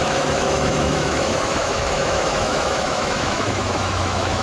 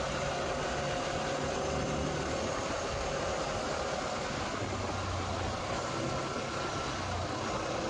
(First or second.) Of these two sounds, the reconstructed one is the first